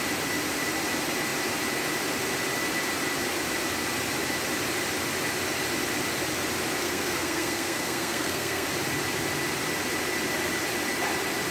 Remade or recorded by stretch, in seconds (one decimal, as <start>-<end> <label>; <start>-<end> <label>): 0.0-6.8 recorded; 6.8-8.7 remade; 8.7-11.5 recorded